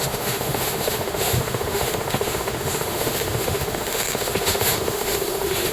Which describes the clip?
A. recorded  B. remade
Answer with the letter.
B